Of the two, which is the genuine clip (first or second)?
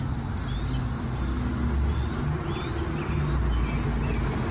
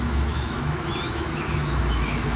first